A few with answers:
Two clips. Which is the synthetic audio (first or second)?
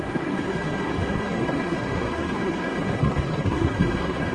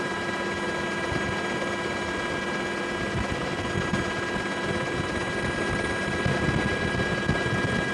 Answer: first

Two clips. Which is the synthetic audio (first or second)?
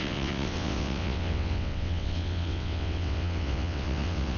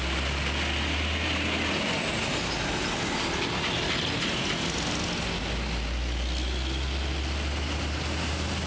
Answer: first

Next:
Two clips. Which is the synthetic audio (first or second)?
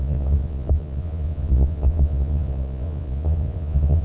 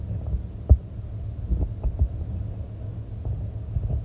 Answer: first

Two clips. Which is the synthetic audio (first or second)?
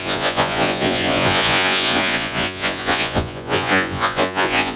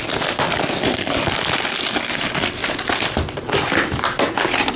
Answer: first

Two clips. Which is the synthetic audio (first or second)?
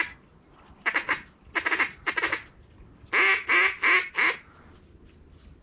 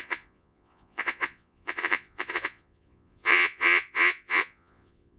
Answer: second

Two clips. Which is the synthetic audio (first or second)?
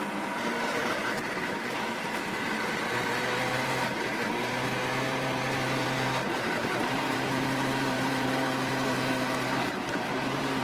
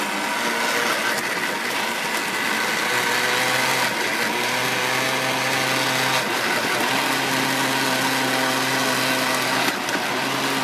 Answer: first